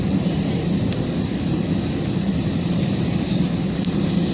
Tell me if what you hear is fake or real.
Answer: real